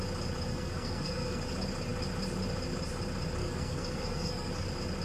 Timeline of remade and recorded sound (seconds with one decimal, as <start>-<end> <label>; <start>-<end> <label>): 0.0-0.5 recorded; 0.5-1.4 remade; 1.4-3.4 recorded; 3.4-4.5 remade; 4.5-5.0 recorded